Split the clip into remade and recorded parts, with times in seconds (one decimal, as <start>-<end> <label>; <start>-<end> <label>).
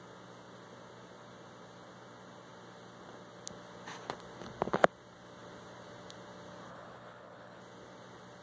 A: 0.0-6.7 recorded; 6.7-7.6 remade; 7.6-8.4 recorded